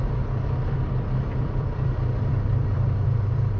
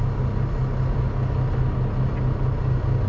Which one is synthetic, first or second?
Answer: first